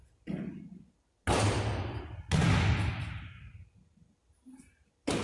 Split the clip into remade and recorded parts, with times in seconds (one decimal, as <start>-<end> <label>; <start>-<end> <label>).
0.0-5.2 recorded